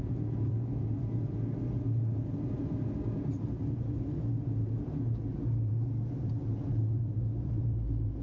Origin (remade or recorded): remade